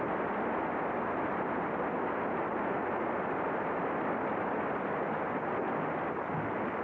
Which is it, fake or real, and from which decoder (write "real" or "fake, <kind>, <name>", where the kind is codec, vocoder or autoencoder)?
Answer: real